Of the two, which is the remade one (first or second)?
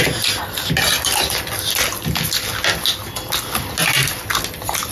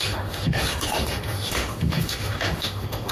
second